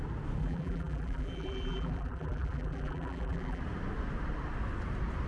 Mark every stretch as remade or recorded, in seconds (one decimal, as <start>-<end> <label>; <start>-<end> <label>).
0.0-0.4 recorded; 0.4-3.6 remade; 3.6-5.3 recorded